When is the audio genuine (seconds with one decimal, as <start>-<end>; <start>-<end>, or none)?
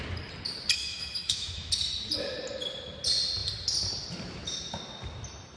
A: 0.0-0.8; 1.7-5.6